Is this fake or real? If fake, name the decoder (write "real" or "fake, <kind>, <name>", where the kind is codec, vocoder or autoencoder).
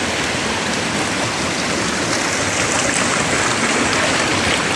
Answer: real